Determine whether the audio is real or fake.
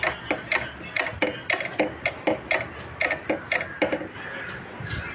real